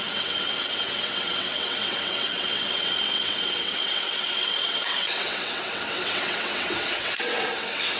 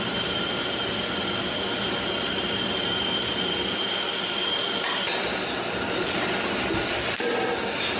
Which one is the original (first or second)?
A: second